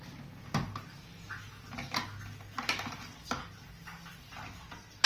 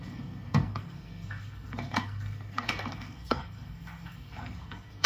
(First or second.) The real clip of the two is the first